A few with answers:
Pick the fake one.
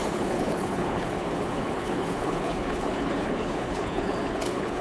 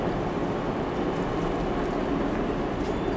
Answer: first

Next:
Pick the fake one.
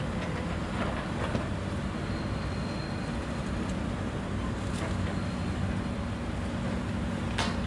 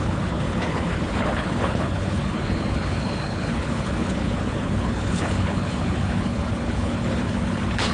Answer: second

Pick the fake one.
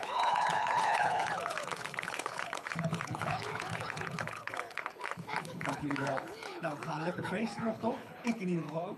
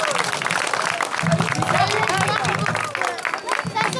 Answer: first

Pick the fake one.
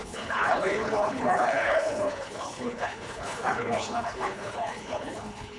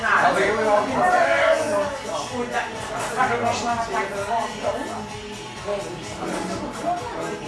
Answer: first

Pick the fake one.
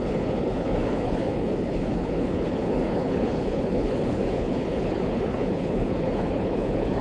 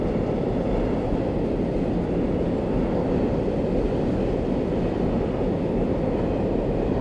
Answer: first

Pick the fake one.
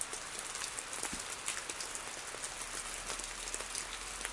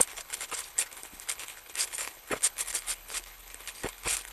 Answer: second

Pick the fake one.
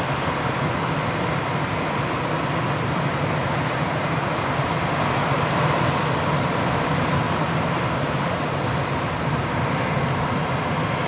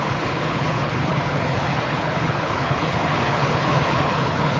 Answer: second